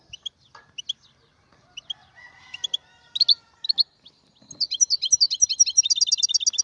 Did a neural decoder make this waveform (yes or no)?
no